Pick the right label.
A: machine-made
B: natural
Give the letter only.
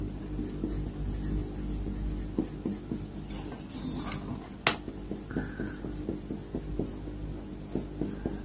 B